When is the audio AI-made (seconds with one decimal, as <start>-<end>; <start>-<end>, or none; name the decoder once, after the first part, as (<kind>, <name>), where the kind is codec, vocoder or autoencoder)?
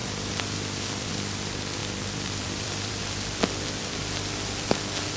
0.0-1.1 (vocoder, BigVGAN v2); 1.8-3.0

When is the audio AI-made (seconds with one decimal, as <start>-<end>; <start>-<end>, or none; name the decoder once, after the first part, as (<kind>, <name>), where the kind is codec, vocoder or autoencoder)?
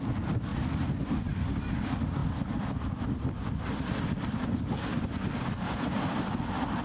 none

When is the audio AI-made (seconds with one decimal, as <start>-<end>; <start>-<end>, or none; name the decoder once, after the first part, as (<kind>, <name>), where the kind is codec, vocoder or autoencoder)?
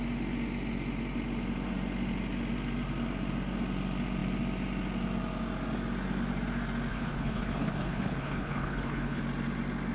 6.9-9.2 (codec, HILCodec)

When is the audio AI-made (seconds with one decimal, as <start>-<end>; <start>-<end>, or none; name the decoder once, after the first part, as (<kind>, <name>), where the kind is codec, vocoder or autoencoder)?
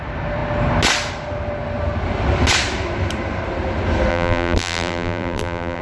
4.1-5.8 (vocoder, BigVGAN v2)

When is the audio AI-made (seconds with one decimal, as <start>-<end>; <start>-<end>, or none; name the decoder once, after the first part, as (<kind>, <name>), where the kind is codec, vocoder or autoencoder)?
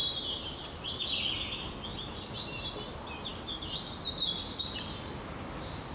0.0-0.8 (vocoder, BigVGAN v2); 1.9-2.5